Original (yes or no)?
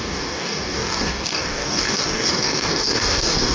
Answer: no